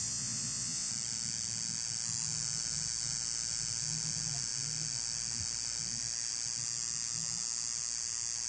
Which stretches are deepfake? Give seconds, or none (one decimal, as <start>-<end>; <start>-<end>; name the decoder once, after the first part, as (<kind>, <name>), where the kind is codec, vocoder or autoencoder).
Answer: 0.0-0.9 (vocoder, Vocos)